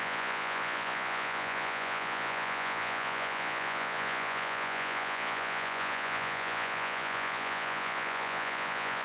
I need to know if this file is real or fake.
fake